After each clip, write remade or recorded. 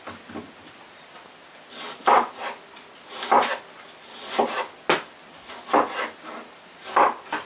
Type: recorded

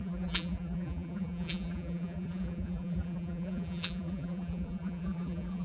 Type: remade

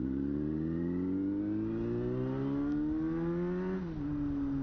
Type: recorded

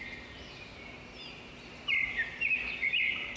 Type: recorded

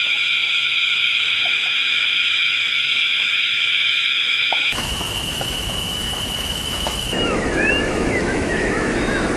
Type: remade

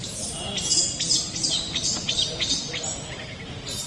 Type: remade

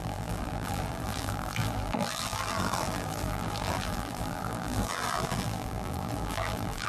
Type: remade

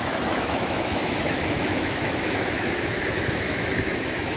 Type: remade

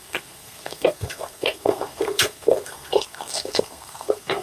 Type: remade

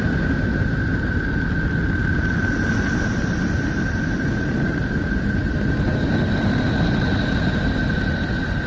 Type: recorded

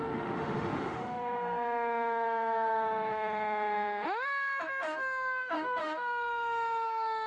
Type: remade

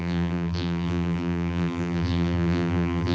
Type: remade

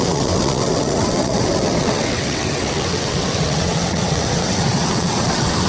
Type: remade